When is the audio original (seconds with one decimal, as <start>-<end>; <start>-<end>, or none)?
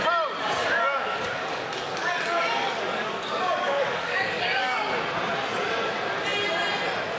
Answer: 0.0-0.6; 4.9-7.2